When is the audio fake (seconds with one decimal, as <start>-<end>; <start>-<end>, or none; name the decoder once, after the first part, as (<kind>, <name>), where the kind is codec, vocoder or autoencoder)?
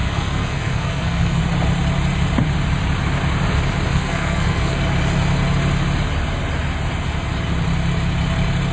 0.0-1.4 (codec, SNAC); 3.9-4.8